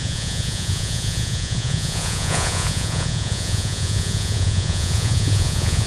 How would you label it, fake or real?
fake